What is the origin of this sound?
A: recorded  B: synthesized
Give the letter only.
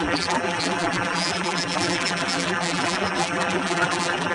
B